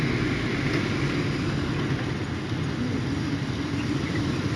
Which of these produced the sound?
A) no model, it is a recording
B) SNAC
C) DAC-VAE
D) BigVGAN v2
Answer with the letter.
A